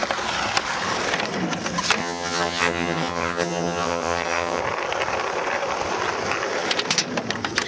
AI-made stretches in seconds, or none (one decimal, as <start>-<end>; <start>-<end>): 2.0-4.6